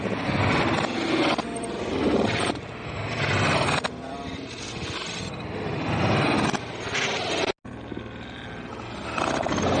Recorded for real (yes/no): yes